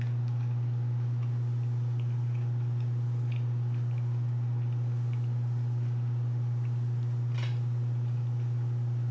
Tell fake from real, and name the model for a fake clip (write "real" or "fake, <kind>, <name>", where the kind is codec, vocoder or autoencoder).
real